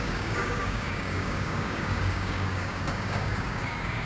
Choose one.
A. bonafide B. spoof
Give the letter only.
B